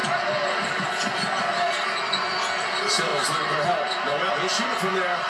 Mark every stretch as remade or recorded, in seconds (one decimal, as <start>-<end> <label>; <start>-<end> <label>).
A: 0.0-5.3 recorded